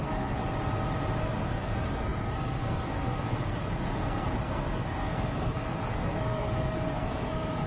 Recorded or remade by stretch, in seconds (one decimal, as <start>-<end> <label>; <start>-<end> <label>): 0.0-0.4 remade; 0.4-1.2 recorded; 1.2-7.7 remade

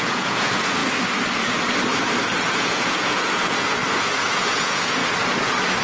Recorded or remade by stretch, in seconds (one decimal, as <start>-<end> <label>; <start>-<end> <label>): 0.0-0.8 remade; 0.8-2.6 recorded; 2.6-5.0 remade; 5.0-5.8 recorded